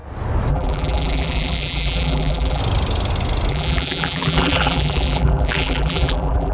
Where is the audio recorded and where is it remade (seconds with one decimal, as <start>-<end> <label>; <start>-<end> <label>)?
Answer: 0.0-0.5 recorded; 0.5-2.6 remade; 2.6-3.5 recorded; 3.5-6.5 remade